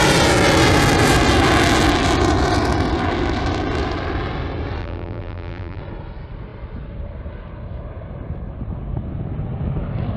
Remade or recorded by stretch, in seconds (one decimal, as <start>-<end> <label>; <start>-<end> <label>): 0.0-4.8 recorded; 4.8-5.8 remade; 5.8-10.2 recorded